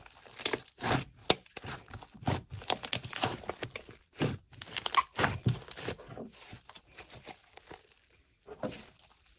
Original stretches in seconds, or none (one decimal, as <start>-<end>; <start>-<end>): 1.2-4.1